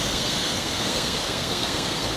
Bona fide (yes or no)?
no